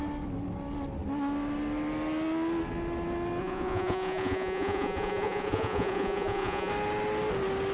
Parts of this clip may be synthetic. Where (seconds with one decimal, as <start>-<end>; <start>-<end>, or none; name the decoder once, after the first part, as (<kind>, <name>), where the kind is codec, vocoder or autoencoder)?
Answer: 3.4-6.7 (vocoder, Vocos)